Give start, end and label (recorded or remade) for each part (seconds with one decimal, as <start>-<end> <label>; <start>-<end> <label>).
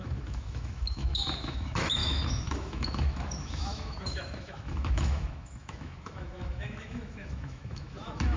0.0-8.4 remade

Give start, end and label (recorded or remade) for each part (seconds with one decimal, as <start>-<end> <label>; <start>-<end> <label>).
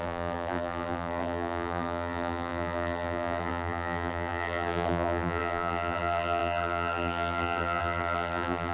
0.0-8.7 remade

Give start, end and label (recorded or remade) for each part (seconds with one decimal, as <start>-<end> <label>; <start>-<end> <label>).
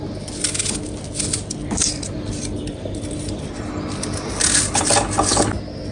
0.0-1.6 recorded; 1.6-3.5 remade; 3.5-5.9 recorded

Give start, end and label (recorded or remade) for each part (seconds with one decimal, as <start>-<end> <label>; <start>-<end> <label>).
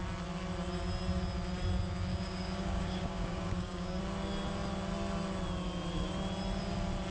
0.0-2.1 recorded; 2.1-4.0 remade; 4.0-7.1 recorded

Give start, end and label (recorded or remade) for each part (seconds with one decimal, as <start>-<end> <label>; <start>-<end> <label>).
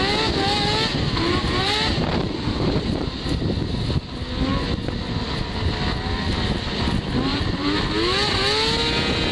0.0-0.9 recorded; 0.9-3.4 remade; 3.4-7.3 recorded; 7.3-7.9 remade; 7.9-9.3 recorded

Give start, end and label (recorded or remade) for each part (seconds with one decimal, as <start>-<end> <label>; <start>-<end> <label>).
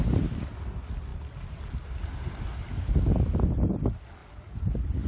0.0-5.1 recorded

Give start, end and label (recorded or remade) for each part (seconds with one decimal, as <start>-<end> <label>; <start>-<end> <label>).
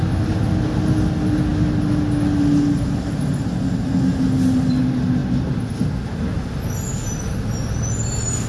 0.0-8.5 recorded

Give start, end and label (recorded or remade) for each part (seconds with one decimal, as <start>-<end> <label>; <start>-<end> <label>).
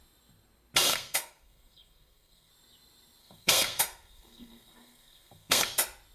0.0-0.9 recorded; 0.9-2.5 remade; 2.5-3.2 recorded; 3.2-5.6 remade; 5.6-6.1 recorded